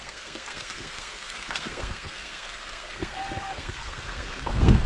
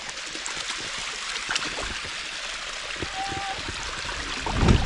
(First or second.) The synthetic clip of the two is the first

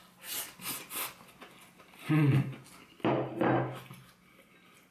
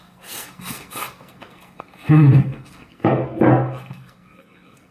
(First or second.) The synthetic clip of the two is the second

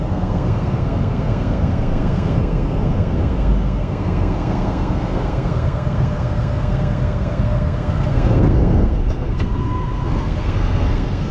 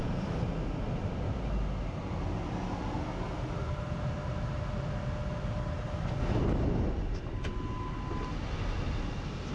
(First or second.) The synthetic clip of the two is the first